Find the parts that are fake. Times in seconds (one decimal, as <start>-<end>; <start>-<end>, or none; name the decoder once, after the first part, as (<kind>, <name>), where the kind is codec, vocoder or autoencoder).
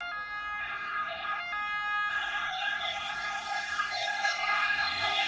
0.6-1.4 (codec, SNAC); 2.1-5.3